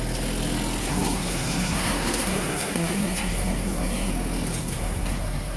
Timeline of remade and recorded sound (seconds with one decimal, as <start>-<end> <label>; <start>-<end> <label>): 0.0-0.8 recorded; 0.8-4.1 remade; 4.1-4.6 recorded; 4.6-5.6 remade